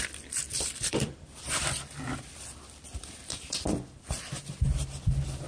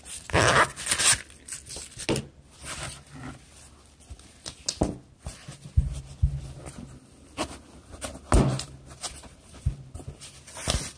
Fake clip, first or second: first